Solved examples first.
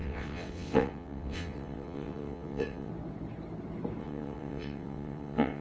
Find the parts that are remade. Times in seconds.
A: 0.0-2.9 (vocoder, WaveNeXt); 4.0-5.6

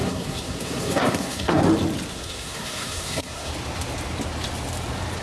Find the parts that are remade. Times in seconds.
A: 0.0-1.6 (codec, SNAC); 2.1-3.5

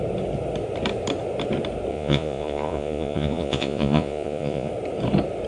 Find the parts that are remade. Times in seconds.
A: 1.9-4.7 (vocoder, Vocos)

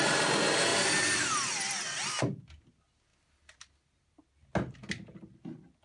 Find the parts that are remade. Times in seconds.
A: none

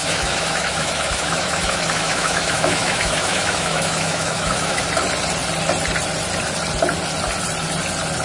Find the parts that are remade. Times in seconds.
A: 0.0-4.8 (autoencoder, DAC-VAE)